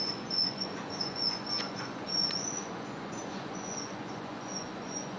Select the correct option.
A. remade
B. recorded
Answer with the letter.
A